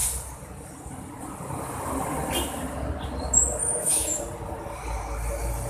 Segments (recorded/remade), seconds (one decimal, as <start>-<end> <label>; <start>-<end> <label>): 0.0-3.6 recorded; 3.6-4.2 remade; 4.2-5.7 recorded